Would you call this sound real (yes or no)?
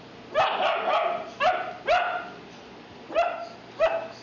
yes